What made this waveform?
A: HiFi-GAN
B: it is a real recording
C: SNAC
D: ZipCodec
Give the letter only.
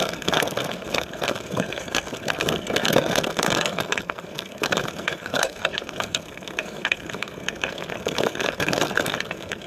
C